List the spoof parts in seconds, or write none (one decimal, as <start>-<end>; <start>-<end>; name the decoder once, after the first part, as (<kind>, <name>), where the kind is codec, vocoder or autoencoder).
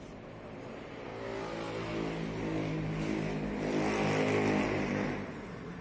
0.0-1.1 (vocoder, BigVGAN v2); 4.6-5.8